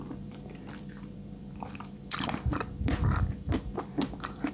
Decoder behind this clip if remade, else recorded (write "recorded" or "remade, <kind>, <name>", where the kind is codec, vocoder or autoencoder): remade, vocoder, BigVGAN v2